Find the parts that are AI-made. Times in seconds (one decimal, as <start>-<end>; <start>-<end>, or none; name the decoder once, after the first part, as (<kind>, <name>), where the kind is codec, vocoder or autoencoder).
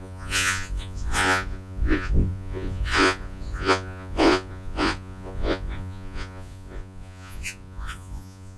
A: 0.0-8.6 (vocoder, Vocos)